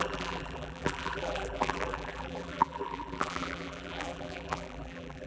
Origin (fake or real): fake